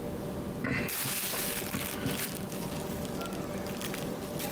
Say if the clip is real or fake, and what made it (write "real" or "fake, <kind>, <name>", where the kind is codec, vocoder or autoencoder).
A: real